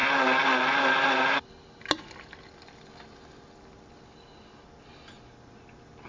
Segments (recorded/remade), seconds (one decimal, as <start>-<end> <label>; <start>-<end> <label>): 0.0-6.1 recorded